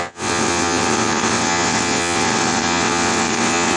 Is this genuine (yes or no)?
no